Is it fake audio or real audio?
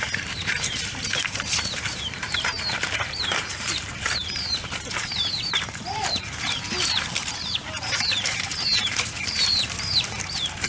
fake